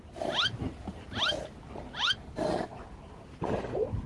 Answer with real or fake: real